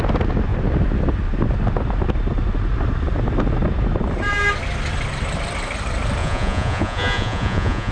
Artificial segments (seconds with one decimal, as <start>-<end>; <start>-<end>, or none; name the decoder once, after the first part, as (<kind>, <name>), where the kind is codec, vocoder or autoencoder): 6.2-7.9 (vocoder, Vocos)